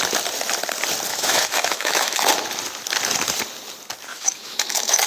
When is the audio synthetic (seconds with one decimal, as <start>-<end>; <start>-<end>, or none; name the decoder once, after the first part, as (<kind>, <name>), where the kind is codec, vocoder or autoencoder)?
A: 1.1-2.3 (autoencoder, DAC-VAE); 4.1-5.1